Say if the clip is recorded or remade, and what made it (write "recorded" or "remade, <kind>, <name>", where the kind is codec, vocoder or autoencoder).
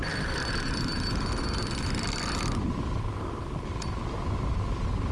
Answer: recorded